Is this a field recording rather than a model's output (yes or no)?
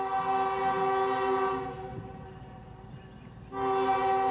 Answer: yes